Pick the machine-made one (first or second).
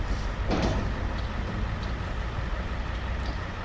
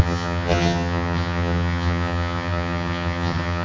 second